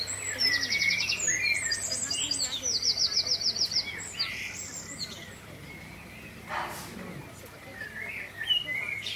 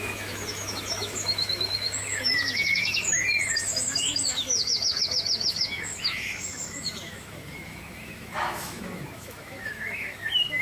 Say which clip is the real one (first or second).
first